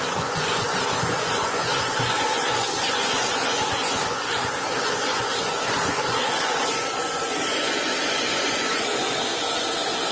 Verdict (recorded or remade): remade